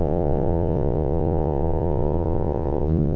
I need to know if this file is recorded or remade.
remade